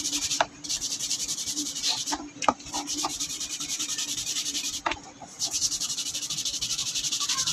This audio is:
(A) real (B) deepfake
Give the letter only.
B